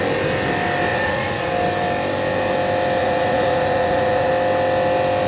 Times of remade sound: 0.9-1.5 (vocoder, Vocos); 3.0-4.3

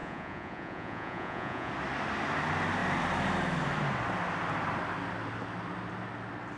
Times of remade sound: 0.0-1.7 (vocoder, Vocos)

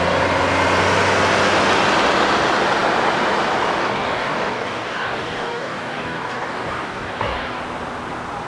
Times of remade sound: 3.8-7.6 (codec, DAC)

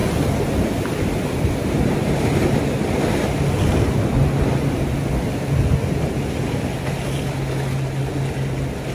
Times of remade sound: none

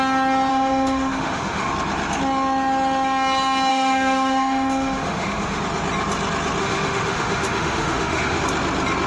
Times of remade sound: 0.5-1.7 (autoencoder, DAC-VAE); 3.7-5.6; 6.6-8.4

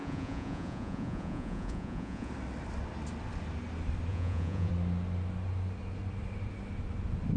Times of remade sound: 0.0-2.3 (vocoder, Vocos); 4.1-4.7

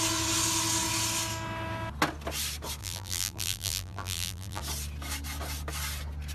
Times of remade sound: 2.8-4.6 (vocoder, BigVGAN v2)

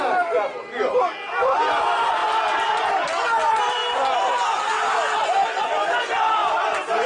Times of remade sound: none